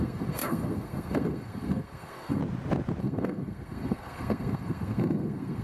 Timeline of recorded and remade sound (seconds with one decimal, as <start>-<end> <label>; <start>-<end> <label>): 0.0-2.4 remade; 2.4-3.0 recorded; 3.0-5.6 remade